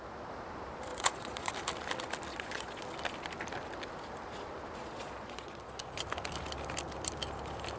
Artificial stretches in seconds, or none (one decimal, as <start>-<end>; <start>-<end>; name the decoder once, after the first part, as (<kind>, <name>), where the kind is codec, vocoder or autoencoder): 0.9-1.5 (vocoder, Vocos); 2.3-2.8; 4.8-5.8